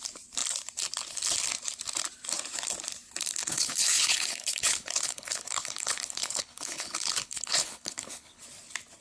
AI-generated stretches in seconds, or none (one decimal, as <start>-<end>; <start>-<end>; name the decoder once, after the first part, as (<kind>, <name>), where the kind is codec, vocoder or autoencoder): 3.4-8.4 (codec, HILCodec)